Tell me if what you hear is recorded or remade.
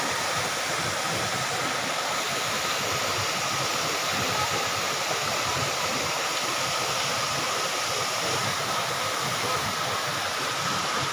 recorded